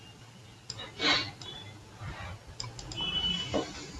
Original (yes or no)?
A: yes